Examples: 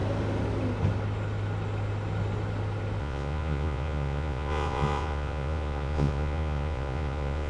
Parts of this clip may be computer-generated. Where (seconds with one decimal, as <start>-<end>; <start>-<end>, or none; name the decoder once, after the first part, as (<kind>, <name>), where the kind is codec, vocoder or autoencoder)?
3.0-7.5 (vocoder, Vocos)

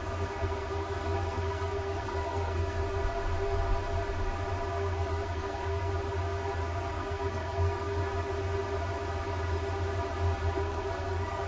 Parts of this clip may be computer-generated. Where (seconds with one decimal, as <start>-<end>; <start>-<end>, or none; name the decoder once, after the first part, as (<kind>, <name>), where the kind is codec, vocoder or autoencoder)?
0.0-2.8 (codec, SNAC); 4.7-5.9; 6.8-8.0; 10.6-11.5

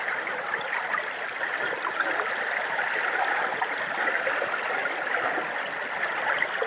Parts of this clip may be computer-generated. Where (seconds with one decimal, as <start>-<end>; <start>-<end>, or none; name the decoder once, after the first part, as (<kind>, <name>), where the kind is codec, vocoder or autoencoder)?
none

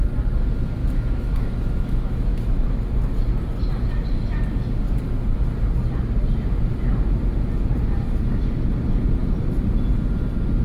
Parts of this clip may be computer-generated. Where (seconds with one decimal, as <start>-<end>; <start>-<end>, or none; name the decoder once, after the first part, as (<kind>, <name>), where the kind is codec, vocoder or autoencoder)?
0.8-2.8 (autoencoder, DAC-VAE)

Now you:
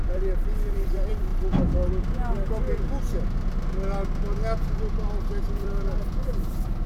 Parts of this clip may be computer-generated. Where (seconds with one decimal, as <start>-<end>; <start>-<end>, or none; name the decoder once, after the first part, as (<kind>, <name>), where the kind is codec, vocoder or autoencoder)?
0.0-1.3 (vocoder, BigVGAN v2); 5.4-6.9

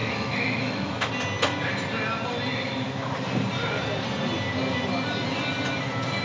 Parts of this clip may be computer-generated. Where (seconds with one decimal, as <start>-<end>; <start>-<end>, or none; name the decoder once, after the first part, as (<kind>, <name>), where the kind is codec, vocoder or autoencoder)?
0.0-1.1 (autoencoder, DAC-VAE); 2.5-3.1